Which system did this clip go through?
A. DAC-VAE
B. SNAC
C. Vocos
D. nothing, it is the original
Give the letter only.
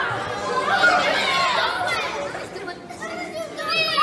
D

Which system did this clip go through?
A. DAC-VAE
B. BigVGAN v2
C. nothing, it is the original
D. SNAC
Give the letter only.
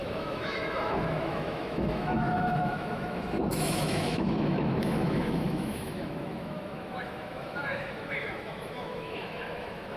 A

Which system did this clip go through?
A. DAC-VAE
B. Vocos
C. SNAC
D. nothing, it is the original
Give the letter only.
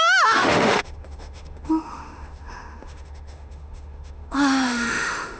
A